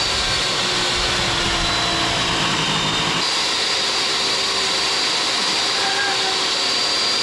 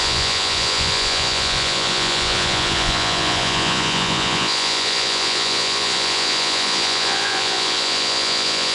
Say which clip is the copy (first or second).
second